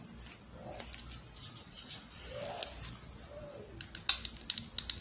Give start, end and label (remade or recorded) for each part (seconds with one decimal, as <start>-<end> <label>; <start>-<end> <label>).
0.0-1.4 recorded; 1.4-2.2 remade; 2.2-5.0 recorded